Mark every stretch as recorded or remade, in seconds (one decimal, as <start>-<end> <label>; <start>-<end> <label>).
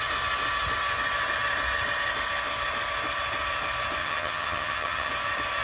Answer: 0.0-4.0 recorded; 4.0-5.1 remade; 5.1-5.6 recorded